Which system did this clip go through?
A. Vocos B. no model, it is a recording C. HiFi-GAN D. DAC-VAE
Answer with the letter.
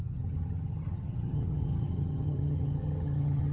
C